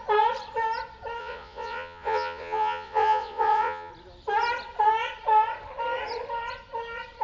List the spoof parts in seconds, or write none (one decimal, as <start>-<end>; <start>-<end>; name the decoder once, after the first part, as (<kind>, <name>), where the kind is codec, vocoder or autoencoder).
1.2-3.9 (vocoder, Vocos)